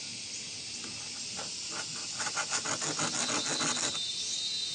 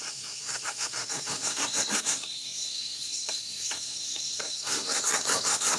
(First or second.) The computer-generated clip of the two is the second